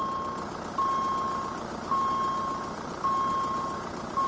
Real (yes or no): yes